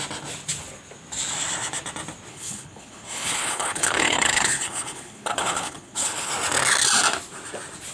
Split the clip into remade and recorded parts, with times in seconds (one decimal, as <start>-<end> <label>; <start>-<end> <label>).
0.0-2.3 recorded; 2.3-6.3 remade; 6.3-7.9 recorded